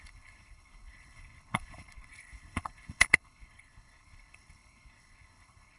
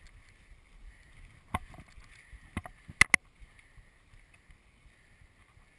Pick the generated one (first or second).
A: first